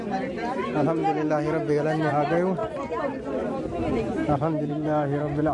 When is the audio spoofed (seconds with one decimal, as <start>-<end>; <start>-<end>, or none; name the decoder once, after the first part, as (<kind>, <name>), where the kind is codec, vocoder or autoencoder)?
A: none